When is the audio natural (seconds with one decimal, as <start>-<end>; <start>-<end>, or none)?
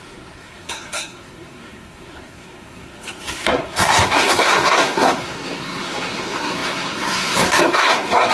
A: none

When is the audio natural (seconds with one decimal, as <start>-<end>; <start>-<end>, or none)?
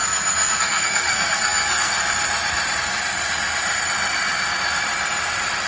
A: 0.0-0.6; 2.0-5.7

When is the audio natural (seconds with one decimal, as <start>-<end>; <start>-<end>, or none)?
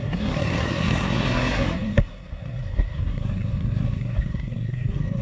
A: none